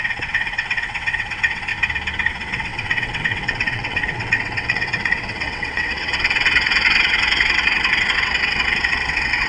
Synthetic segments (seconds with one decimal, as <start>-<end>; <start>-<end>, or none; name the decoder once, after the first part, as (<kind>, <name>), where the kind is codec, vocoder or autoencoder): 0.0-1.7 (vocoder, WaveNeXt); 2.3-9.5